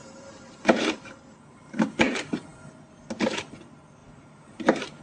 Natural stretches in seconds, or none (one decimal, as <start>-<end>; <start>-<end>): 2.1-4.0